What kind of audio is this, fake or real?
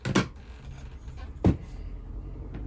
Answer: real